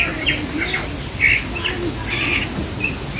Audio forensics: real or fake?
real